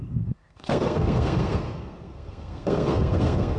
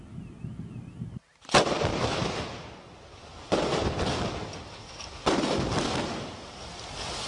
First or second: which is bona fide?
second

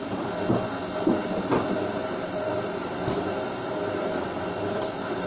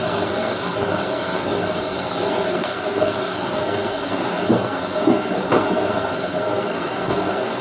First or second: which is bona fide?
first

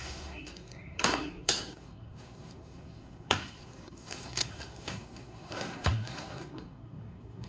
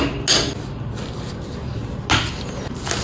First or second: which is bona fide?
second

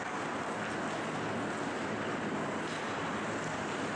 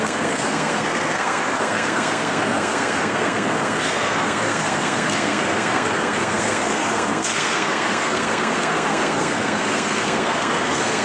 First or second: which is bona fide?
first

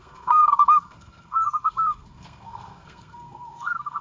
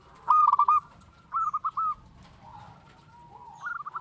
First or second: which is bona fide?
second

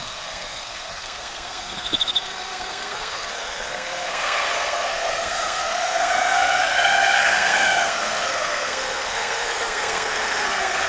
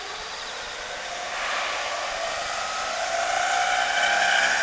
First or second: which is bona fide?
second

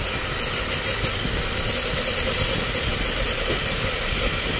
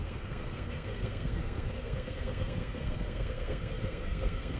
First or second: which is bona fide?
first